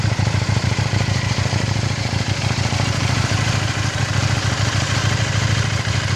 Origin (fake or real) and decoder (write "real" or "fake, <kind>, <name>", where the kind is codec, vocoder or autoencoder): fake, vocoder, BigVGAN v2